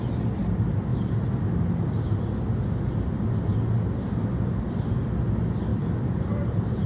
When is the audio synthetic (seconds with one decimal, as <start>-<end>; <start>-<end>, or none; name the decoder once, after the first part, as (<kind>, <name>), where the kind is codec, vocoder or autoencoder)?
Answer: 5.7-6.9 (vocoder, BigVGAN v2)